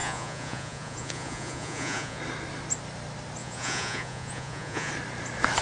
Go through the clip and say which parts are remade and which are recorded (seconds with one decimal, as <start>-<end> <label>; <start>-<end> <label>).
0.0-2.2 remade; 2.2-3.4 recorded; 3.4-4.9 remade; 4.9-5.6 recorded